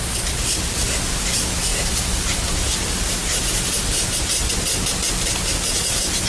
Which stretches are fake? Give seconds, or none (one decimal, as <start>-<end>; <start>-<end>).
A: none